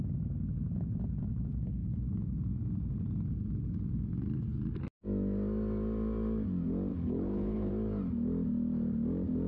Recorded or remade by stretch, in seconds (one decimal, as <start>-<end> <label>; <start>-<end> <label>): 0.0-6.9 recorded; 6.9-7.7 remade; 7.7-9.5 recorded